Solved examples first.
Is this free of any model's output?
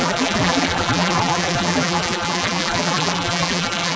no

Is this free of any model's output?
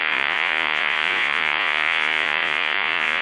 no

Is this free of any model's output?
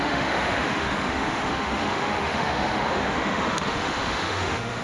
no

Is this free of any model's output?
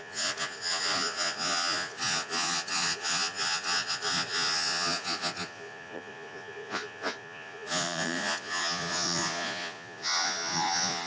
no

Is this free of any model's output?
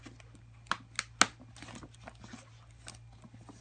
yes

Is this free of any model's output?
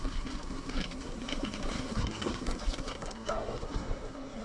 no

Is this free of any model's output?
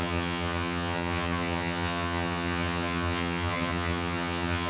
no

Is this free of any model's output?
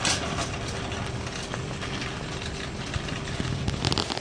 yes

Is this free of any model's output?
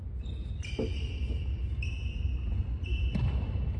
yes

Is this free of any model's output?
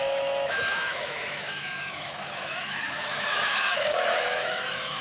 no